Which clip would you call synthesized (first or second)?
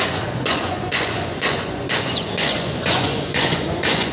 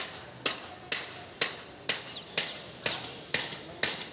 first